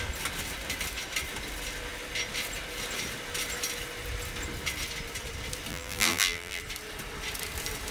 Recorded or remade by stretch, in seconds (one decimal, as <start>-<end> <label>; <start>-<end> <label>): 0.0-5.7 recorded; 5.7-6.6 remade; 6.6-7.9 recorded